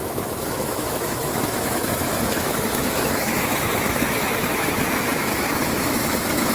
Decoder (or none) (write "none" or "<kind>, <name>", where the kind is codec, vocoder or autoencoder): autoencoder, DAC-VAE